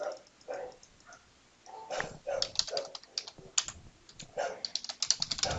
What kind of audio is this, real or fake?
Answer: real